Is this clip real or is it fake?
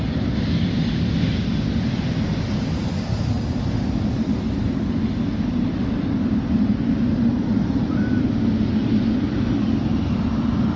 real